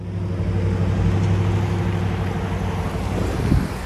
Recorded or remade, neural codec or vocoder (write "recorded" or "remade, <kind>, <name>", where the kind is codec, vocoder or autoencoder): recorded